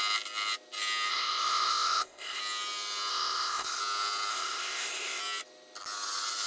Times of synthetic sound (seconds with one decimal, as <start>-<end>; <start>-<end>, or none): 1.1-2.4; 3.1-3.8; 4.3-5.2